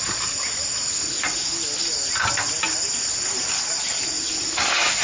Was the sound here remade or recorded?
recorded